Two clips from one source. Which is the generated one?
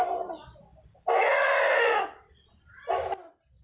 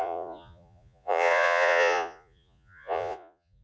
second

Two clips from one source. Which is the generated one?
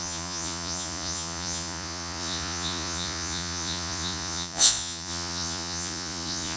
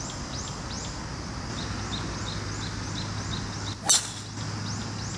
first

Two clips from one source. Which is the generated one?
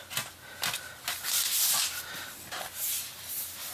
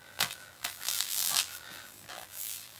second